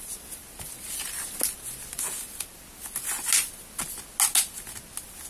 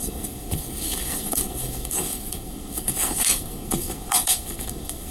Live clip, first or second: first